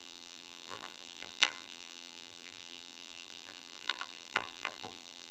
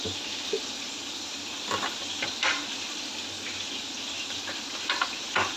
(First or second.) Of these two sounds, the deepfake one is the first